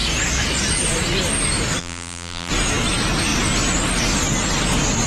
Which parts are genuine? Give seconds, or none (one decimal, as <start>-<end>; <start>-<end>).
0.0-1.8; 2.5-5.1